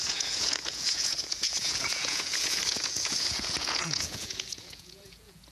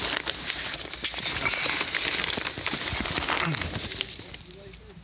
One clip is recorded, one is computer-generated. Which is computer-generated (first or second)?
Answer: first